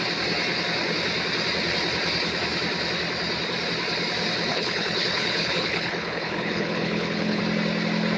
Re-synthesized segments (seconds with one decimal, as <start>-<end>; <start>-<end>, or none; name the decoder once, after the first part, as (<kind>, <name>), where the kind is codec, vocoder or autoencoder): 4.5-7.4 (codec, HILCodec)